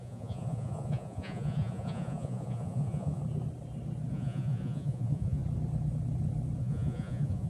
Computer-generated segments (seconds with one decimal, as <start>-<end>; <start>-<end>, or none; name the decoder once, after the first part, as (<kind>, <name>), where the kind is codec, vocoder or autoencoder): 0.0-3.2 (vocoder, Vocos); 4.1-5.4; 6.6-7.5

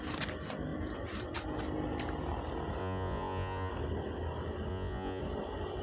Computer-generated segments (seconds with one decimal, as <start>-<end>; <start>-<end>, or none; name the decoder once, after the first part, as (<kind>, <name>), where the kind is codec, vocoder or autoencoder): 2.8-3.7 (vocoder, Vocos); 4.7-5.2

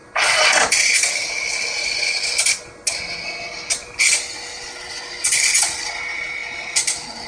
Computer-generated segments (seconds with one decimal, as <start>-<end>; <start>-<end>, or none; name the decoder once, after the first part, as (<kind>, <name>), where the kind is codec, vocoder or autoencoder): 4.5-5.0 (vocoder, WaveNeXt)

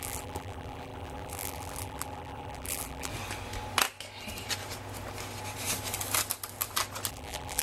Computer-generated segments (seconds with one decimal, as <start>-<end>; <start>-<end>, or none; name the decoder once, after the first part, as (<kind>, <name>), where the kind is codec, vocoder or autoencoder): 0.0-3.1 (vocoder, BigVGAN v2); 7.1-7.6

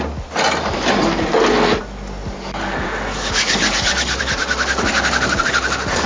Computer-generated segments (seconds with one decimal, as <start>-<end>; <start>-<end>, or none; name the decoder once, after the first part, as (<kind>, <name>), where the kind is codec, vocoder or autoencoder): none

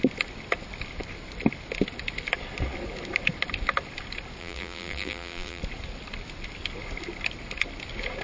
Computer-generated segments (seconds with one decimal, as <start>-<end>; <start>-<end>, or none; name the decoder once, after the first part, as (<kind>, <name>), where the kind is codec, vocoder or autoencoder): 4.4-5.6 (vocoder, BigVGAN v2)

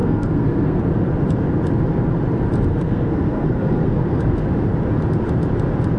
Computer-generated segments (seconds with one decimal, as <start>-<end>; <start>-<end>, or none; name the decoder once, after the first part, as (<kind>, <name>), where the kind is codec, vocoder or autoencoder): 0.0-0.8 (codec, SNAC); 2.7-4.5

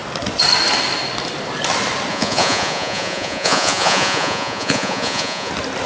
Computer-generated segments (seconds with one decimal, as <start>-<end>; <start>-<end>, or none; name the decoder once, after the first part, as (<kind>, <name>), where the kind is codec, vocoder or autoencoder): 2.1-5.5 (vocoder, Vocos)